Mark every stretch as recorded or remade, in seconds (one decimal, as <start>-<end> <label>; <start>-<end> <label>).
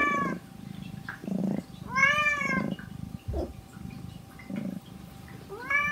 0.0-1.4 remade; 1.4-2.0 recorded; 2.0-5.5 remade; 5.5-5.9 recorded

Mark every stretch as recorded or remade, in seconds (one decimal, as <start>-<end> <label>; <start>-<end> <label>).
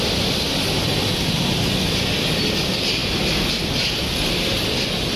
0.0-5.2 recorded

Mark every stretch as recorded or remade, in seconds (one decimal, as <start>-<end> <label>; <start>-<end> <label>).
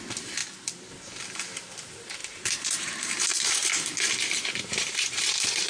0.0-2.2 recorded; 2.2-5.7 remade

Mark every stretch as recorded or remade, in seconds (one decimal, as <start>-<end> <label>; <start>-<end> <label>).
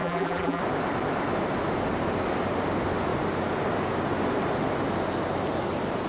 0.0-0.6 remade; 0.6-6.1 recorded